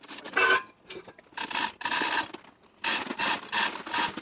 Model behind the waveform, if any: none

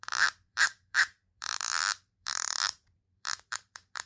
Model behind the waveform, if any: vocoder, BigVGAN v2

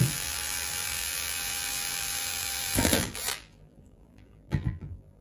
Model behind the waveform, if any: vocoder, BigVGAN v2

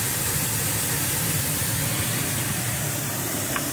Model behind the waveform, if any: vocoder, BigVGAN v2